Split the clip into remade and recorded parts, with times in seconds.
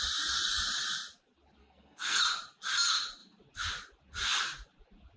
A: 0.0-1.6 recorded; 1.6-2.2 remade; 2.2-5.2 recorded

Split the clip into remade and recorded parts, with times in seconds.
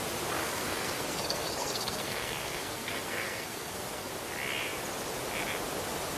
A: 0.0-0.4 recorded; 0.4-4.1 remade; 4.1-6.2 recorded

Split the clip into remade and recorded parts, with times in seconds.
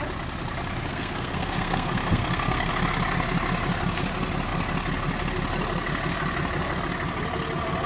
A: 0.0-0.9 recorded; 0.9-2.7 remade; 2.7-7.9 recorded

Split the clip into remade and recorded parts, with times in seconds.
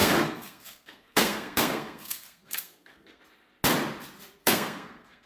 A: 0.0-3.2 remade; 3.2-4.4 recorded; 4.4-5.3 remade